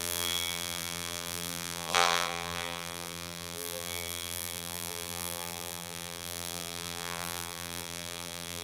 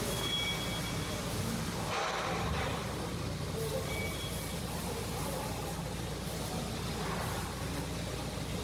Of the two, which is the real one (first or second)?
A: second